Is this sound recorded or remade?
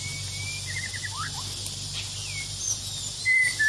recorded